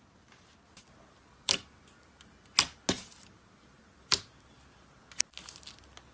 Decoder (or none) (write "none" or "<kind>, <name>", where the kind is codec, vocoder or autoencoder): none